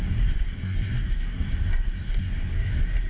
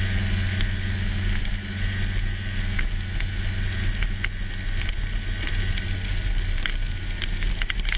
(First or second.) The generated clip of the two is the first